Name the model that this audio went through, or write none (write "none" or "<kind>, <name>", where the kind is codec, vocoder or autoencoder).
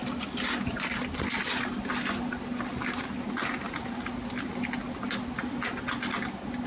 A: none